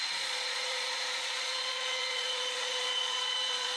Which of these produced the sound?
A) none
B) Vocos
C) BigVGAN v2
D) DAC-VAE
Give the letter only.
B